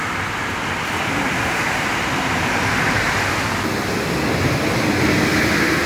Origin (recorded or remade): recorded